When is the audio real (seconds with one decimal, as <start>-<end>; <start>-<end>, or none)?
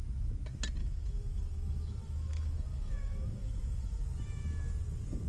0.0-0.8; 4.0-5.3